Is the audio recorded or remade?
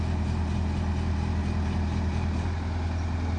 recorded